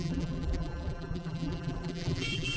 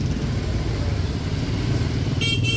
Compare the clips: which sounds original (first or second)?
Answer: second